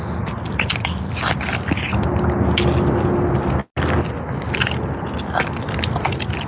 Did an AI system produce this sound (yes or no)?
no